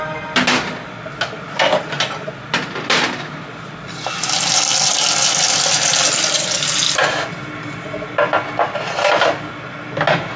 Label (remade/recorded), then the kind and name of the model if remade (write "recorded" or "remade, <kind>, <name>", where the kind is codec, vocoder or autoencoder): recorded